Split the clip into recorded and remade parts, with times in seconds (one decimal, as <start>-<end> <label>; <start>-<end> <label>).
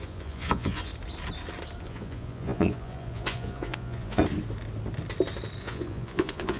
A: 0.0-0.9 remade; 0.9-1.8 recorded; 1.8-4.2 remade; 4.2-5.6 recorded; 5.6-6.6 remade